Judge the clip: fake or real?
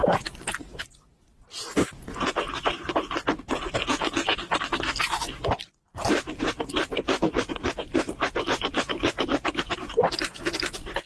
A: real